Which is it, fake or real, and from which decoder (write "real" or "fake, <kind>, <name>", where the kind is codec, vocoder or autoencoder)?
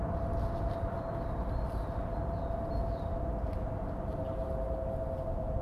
real